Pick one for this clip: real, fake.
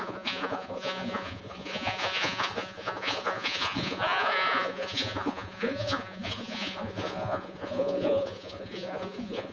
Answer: fake